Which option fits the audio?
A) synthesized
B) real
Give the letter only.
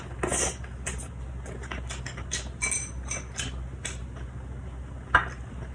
B